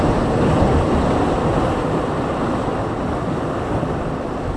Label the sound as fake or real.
real